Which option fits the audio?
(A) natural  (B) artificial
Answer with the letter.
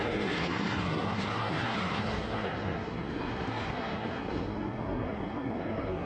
B